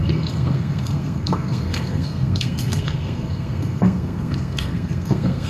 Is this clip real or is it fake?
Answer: fake